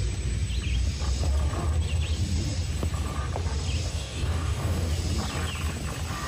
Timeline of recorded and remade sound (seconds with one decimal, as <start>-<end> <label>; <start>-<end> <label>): 0.0-3.9 recorded; 3.9-4.9 remade; 4.9-6.3 recorded